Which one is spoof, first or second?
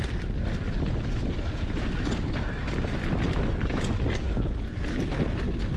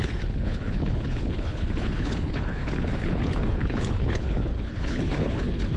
second